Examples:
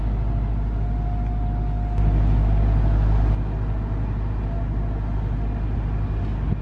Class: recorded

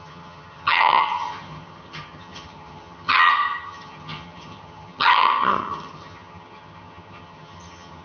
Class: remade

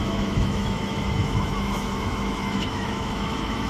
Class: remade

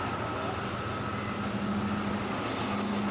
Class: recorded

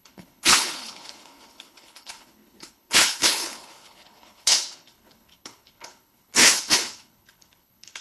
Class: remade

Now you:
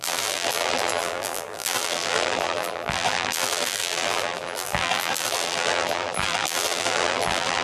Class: remade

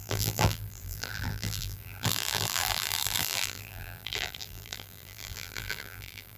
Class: remade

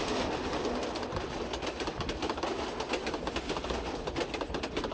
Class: recorded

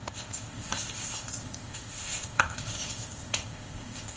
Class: remade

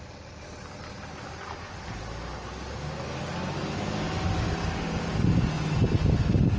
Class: recorded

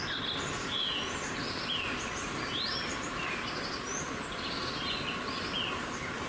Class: recorded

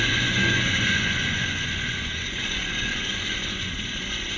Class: remade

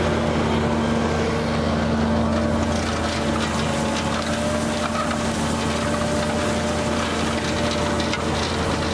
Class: recorded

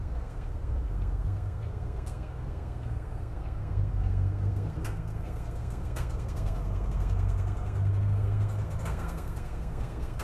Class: remade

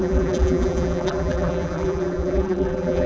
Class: remade